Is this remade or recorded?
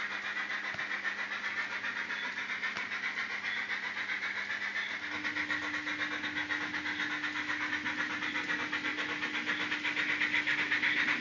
recorded